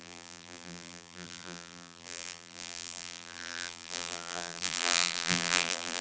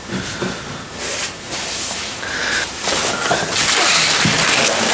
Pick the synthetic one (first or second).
first